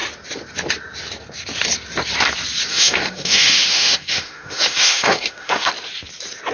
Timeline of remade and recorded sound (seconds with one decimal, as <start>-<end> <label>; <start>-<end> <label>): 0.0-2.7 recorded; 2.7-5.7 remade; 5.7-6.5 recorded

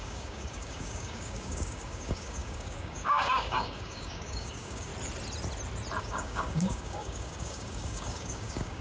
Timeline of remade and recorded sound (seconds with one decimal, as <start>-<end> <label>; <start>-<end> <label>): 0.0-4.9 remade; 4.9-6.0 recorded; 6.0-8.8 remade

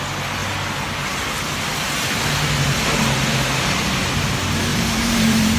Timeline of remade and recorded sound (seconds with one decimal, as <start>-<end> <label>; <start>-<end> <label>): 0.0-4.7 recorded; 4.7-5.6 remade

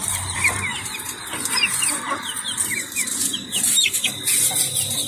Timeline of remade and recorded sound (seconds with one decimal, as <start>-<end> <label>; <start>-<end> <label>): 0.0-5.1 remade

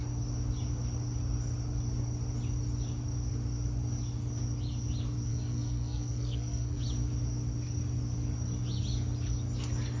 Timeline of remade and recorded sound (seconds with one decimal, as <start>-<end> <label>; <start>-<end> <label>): 0.0-5.3 recorded; 5.3-6.8 remade; 6.8-10.0 recorded

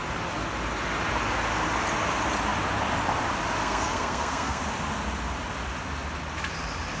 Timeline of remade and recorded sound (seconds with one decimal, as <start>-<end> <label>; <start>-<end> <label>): 0.0-3.6 recorded; 3.6-4.6 remade; 4.6-7.0 recorded

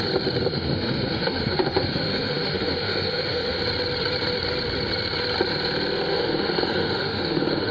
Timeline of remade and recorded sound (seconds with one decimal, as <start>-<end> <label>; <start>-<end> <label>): 0.0-0.5 recorded; 0.5-3.6 remade; 3.6-6.1 recorded; 6.1-7.7 remade